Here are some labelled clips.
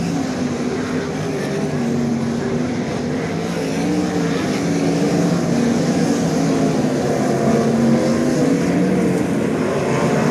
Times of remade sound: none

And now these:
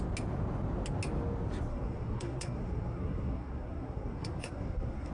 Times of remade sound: 1.7-5.1 (codec, SNAC)

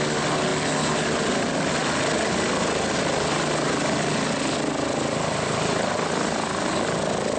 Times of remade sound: none

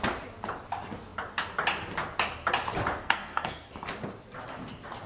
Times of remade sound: 3.0-3.7 (codec, SNAC)